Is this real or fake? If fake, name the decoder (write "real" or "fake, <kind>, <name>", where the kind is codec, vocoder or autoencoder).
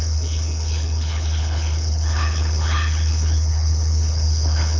fake, codec, HILCodec